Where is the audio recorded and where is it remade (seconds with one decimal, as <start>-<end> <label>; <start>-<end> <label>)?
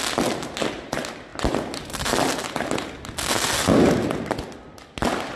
0.0-5.4 recorded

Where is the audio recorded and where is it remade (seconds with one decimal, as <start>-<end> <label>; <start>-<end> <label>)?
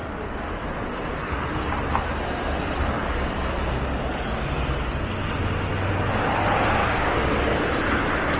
0.0-6.8 recorded; 6.8-7.3 remade; 7.3-8.4 recorded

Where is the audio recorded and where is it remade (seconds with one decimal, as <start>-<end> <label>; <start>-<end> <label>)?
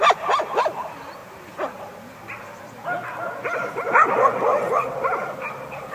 0.0-5.9 recorded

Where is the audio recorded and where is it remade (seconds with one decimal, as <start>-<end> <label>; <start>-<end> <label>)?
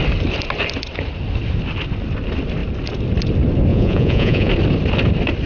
0.0-3.7 recorded; 3.7-4.5 remade; 4.5-5.5 recorded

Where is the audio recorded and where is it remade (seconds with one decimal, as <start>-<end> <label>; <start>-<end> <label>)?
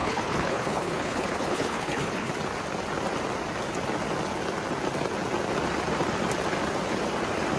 0.0-2.3 remade; 2.3-7.6 recorded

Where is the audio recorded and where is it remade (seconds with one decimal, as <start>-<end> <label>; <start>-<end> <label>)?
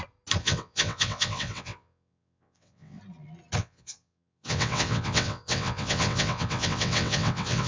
0.0-0.4 recorded; 0.4-3.0 remade; 3.0-3.6 recorded; 3.6-7.7 remade